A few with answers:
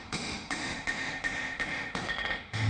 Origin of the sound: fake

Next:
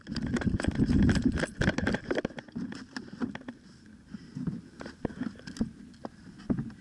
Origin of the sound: real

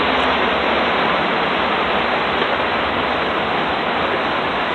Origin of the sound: real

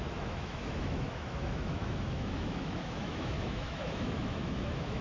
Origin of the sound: fake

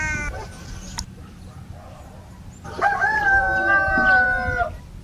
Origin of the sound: real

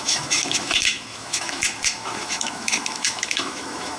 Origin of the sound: fake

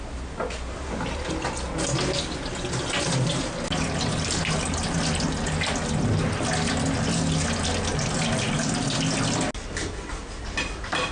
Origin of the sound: real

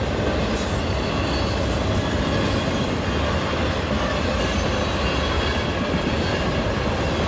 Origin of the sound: real